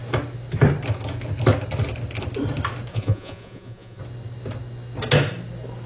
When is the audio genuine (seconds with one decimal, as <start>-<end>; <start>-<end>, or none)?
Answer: 0.0-2.9; 4.0-5.9

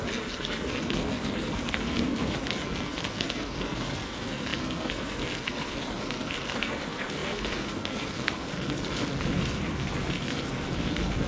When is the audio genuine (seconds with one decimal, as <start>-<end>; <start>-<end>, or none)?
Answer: none

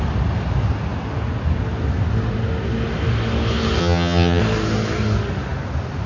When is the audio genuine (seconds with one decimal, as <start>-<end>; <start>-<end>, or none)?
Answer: 0.0-3.8; 4.4-6.1

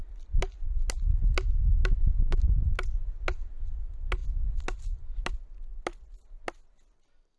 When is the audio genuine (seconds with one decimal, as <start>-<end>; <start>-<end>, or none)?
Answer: 0.0-7.4

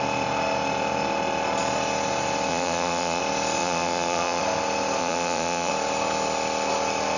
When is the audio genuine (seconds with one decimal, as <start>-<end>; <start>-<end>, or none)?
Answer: 0.0-2.5; 3.2-3.6; 4.4-5.0; 5.7-7.2

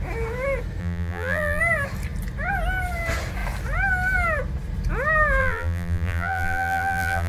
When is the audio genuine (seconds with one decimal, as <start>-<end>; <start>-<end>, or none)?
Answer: 0.0-0.8; 1.6-5.4

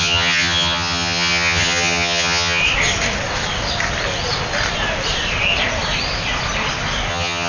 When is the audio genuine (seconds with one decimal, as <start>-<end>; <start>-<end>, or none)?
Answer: 2.6-7.1

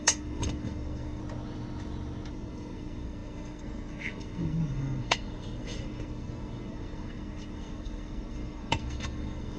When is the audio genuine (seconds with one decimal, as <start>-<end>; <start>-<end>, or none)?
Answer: 1.2-2.3